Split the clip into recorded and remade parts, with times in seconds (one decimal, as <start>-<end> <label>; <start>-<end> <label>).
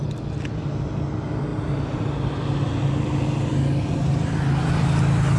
0.0-5.4 recorded